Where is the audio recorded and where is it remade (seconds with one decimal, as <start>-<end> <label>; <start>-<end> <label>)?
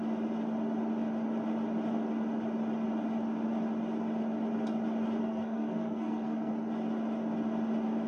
0.0-5.2 recorded; 5.2-6.5 remade; 6.5-8.1 recorded